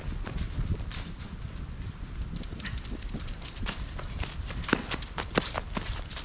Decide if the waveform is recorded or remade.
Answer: recorded